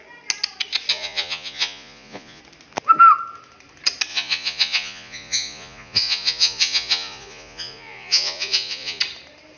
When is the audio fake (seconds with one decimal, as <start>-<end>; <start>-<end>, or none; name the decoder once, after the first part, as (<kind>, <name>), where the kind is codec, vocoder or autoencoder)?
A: 0.9-2.4 (vocoder, Vocos); 4.1-9.0